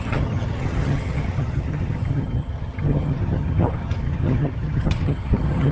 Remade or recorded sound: remade